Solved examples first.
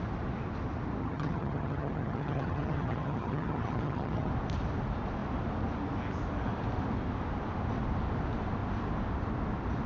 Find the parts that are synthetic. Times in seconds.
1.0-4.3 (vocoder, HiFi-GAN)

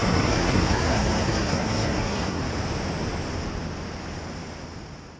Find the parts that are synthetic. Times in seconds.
0.0-2.4 (codec, SNAC)